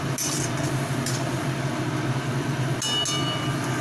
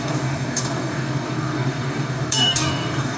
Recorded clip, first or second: first